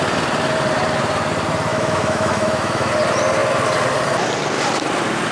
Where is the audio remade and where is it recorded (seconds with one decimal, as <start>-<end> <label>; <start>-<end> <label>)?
0.0-1.7 recorded; 1.7-2.9 remade; 2.9-5.3 recorded